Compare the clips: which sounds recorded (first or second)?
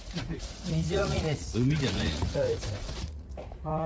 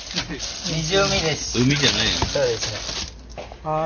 second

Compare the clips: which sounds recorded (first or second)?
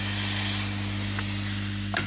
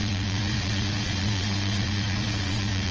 first